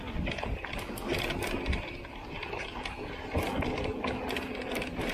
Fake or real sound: real